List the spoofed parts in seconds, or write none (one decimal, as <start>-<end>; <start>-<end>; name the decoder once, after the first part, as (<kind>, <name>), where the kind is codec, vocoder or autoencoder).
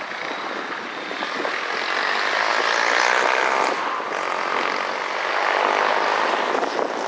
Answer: none